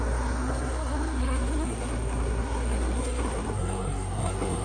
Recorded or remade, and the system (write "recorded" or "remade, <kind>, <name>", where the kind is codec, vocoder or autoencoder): remade, codec, SNAC